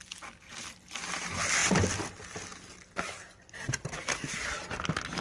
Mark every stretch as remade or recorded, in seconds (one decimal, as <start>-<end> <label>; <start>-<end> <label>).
0.0-5.2 recorded